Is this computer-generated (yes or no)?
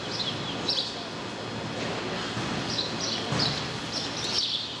no